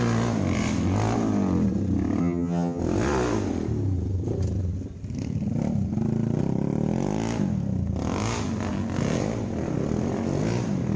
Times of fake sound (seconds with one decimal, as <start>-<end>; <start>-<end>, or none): 2.2-2.8

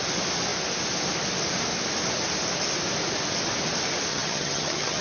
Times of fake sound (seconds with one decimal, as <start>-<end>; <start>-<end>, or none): 4.1-5.0

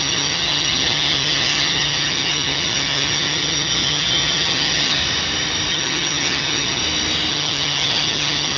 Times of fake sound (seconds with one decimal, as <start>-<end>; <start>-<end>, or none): 0.0-5.0; 5.7-6.8; 7.3-8.6

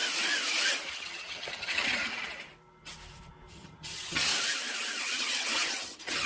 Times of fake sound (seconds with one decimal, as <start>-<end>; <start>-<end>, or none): 0.9-2.1; 3.5-4.3; 5.0-6.3

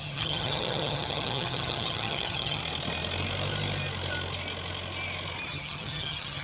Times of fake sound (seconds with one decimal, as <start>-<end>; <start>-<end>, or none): 0.0-2.6; 5.5-6.4

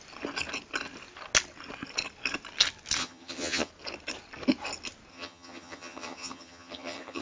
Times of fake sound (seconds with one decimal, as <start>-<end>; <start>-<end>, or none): 3.0-3.7; 5.1-7.2